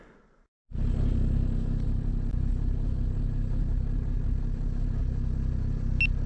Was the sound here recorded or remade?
recorded